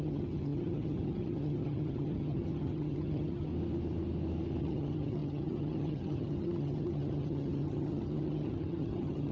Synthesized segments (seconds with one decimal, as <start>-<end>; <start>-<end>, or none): 0.0-3.5; 4.6-9.3